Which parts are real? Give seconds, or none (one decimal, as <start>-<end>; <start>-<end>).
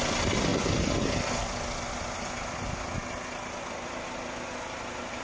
0.0-5.2